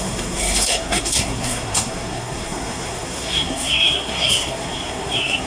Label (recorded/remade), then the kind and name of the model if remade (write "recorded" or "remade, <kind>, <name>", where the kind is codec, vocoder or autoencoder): remade, codec, SNAC